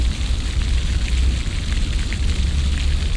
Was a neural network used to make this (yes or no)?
no